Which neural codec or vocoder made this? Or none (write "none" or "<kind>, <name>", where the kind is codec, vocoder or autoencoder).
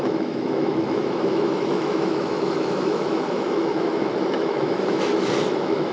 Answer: autoencoder, DAC-VAE